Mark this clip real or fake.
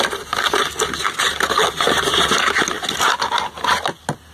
real